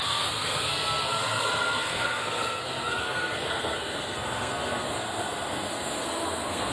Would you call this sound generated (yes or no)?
yes